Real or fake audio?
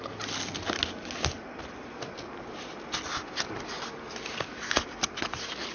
real